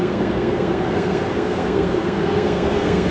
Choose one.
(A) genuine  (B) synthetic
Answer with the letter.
B